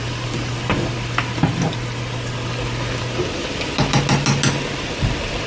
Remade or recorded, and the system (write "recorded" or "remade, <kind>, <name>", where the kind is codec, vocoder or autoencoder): recorded